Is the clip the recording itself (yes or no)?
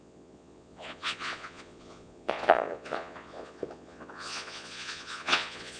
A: no